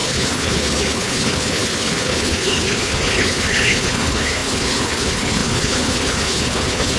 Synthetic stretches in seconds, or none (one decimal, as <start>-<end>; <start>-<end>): 0.0-7.0